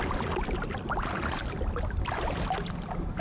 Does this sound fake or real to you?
real